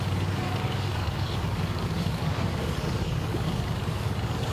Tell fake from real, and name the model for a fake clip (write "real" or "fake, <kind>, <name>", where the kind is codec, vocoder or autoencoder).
fake, codec, DAC